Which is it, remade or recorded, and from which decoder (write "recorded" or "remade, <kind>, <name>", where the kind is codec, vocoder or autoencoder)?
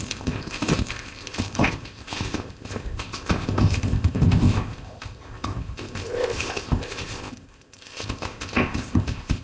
remade, codec, ZipCodec